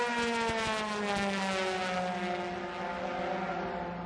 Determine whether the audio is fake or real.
real